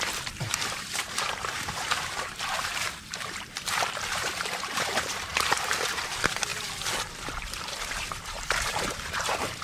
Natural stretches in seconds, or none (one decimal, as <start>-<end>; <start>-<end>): 6.5-7.6